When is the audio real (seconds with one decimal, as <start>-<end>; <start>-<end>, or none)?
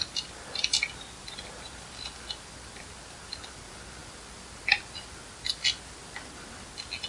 0.0-7.1